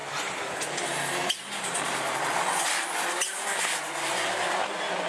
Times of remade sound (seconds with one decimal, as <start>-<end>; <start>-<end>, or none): none